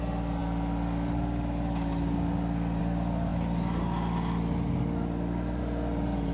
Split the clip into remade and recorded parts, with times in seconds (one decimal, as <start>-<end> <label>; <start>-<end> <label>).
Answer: 0.0-6.3 recorded